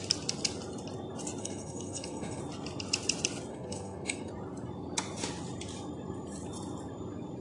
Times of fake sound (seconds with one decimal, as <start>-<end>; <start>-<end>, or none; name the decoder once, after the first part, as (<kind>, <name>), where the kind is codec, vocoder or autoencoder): 1.4-2.4 (codec, SNAC); 3.5-4.3